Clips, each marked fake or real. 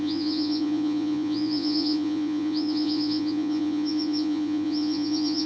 fake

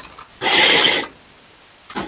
real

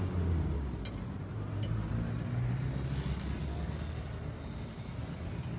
real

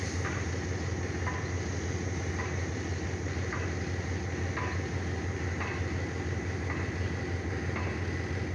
real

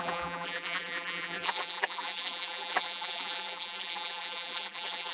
fake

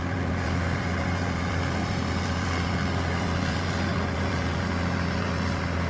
fake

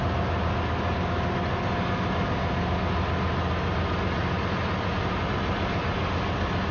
real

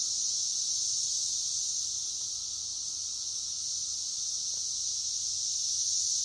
real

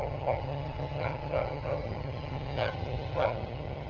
fake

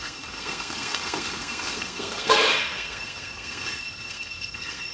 fake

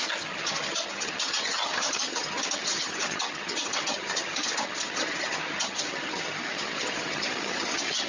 fake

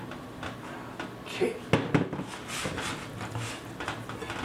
real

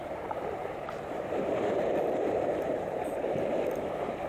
fake